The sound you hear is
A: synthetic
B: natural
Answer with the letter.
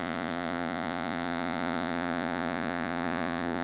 A